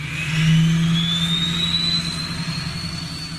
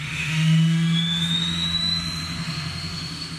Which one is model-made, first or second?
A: second